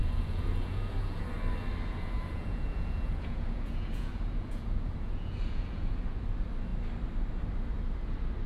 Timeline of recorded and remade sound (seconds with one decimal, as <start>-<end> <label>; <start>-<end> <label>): 0.0-1.3 remade; 1.3-1.9 recorded; 1.9-6.2 remade; 6.2-8.5 recorded